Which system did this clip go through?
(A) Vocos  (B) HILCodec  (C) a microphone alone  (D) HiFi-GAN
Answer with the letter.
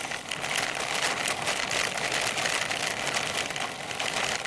C